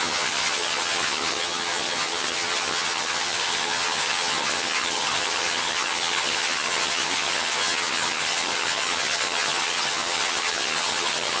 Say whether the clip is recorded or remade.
remade